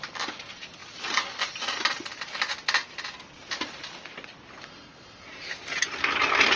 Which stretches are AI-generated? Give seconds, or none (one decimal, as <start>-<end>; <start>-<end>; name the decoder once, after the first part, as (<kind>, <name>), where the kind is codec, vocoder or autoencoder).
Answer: none